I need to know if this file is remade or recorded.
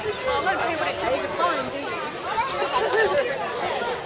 recorded